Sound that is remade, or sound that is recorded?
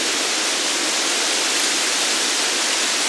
recorded